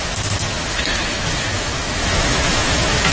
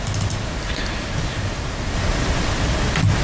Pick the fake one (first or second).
first